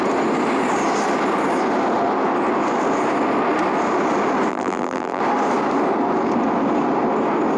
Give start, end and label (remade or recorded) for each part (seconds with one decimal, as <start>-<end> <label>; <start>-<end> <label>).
0.0-4.5 recorded; 4.5-5.2 remade; 5.2-7.6 recorded